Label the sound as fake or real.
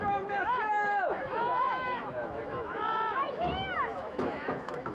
fake